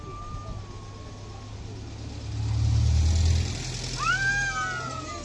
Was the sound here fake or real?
real